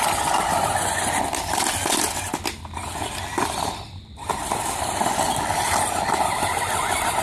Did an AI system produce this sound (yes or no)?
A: no